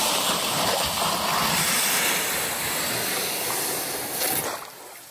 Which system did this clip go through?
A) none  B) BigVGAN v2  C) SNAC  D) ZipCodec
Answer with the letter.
A